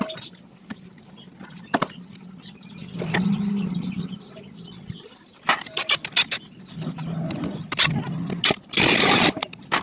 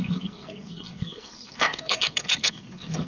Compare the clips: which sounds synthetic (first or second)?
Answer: second